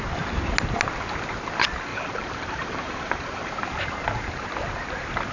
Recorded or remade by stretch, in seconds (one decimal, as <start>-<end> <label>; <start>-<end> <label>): 0.0-1.9 recorded; 1.9-3.6 remade; 3.6-5.3 recorded